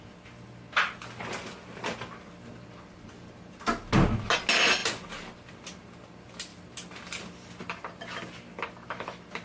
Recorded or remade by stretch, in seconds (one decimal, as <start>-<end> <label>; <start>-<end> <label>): 0.0-9.4 recorded

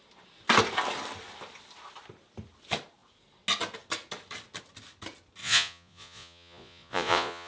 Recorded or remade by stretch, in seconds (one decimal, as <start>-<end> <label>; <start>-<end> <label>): 0.0-5.4 recorded; 5.4-7.5 remade

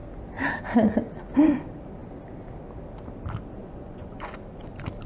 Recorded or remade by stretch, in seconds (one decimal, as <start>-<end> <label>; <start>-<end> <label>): 0.0-3.6 recorded; 3.6-4.3 remade; 4.3-5.1 recorded

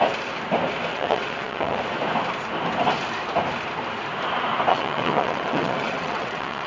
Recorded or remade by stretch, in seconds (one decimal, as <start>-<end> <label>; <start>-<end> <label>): 0.0-0.9 recorded; 0.9-1.8 remade; 1.8-4.7 recorded; 4.7-6.7 remade

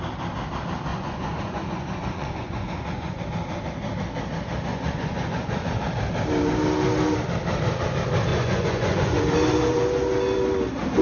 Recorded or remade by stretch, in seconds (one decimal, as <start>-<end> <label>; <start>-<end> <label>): 0.0-0.9 recorded; 0.9-3.2 remade; 3.2-4.7 recorded; 4.7-5.8 remade; 5.8-8.3 recorded; 8.3-9.2 remade; 9.2-11.0 recorded

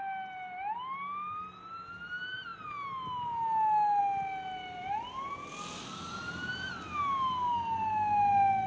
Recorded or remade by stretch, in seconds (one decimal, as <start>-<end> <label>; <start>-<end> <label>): 0.0-8.7 recorded